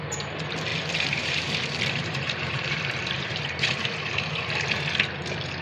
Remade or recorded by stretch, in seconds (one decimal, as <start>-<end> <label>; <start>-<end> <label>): 0.0-0.7 recorded; 0.7-3.7 remade; 3.7-5.6 recorded

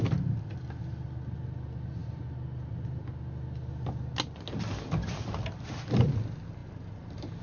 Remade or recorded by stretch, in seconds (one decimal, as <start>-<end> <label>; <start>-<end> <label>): 0.0-6.6 recorded; 6.6-7.4 remade

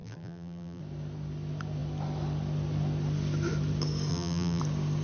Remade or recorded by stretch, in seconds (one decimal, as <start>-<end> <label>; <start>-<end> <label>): 0.0-0.8 remade; 0.8-4.1 recorded; 4.1-4.6 remade; 4.6-5.0 recorded

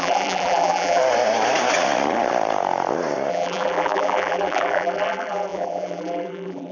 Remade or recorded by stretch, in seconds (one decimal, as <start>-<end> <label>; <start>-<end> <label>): 0.0-1.0 remade; 1.0-3.3 recorded; 3.3-6.7 remade

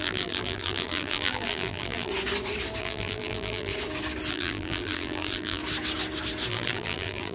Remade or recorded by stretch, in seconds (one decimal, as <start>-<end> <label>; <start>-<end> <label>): 0.0-2.1 remade; 2.1-2.8 recorded; 2.8-3.7 remade; 3.7-4.3 recorded; 4.3-5.6 remade; 5.6-6.5 recorded; 6.5-7.3 remade

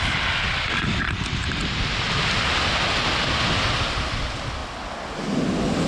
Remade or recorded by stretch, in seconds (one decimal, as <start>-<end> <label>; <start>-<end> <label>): 0.0-1.4 remade; 1.4-4.1 recorded; 4.1-4.6 remade; 4.6-5.9 recorded

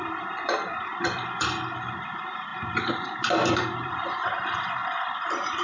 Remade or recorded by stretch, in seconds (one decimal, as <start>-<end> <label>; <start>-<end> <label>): 0.0-0.9 remade; 0.9-2.1 recorded; 2.1-2.5 remade; 2.5-3.5 recorded; 3.5-4.8 remade; 4.8-5.6 recorded